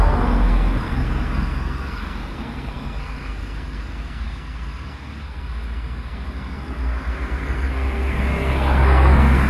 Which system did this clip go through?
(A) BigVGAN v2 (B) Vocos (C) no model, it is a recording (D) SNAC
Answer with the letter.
D